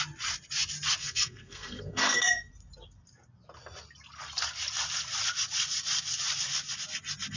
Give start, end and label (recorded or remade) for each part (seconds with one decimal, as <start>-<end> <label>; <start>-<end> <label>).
0.0-1.0 recorded; 1.0-2.5 remade; 2.5-7.4 recorded